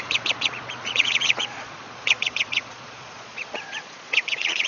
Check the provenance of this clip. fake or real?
fake